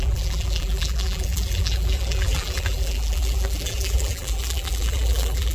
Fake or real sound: fake